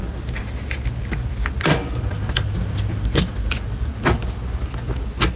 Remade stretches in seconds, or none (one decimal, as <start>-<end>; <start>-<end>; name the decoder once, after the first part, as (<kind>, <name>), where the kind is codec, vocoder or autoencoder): none